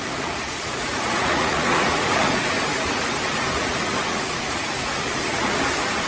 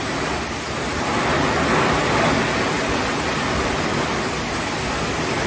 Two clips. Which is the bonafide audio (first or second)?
second